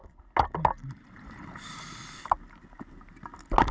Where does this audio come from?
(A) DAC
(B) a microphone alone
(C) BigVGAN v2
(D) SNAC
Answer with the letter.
B